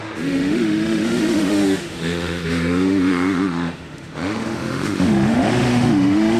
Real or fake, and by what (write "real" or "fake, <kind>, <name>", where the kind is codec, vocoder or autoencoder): fake, autoencoder, DAC-VAE